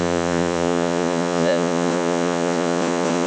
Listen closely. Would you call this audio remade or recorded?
remade